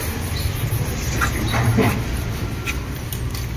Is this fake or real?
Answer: fake